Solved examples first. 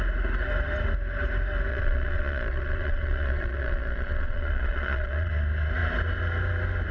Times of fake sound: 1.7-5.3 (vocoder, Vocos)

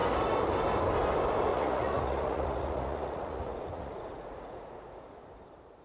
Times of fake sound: 1.5-5.0 (vocoder, Vocos)

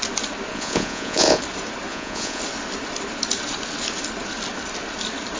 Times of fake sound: 0.5-1.4 (vocoder, Vocos); 1.9-2.4

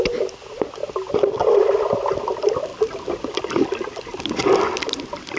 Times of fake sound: none

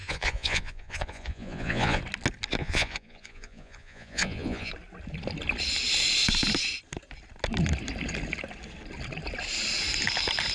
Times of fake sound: 0.0-2.0 (vocoder, Vocos); 2.6-4.7

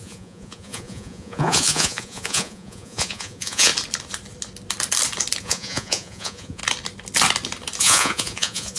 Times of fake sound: 0.0-3.7 (vocoder, Vocos); 5.4-6.6; 7.8-8.8

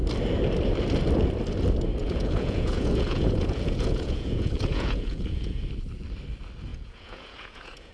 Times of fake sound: 2.0-5.6 (vocoder, Vocos); 6.7-7.9

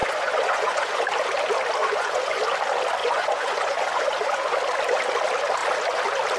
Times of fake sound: 0.0-1.0 (vocoder, Vocos); 1.8-2.4; 3.0-4.6